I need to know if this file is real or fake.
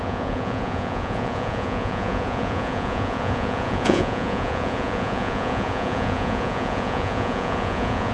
fake